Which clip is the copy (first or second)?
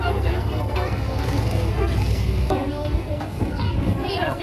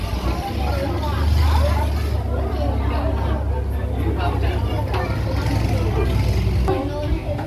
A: first